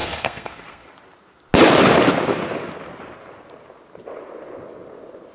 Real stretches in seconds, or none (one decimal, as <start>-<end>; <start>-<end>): 0.9-5.3